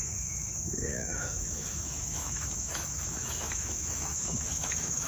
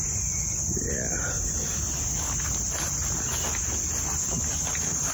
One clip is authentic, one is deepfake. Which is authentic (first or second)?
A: second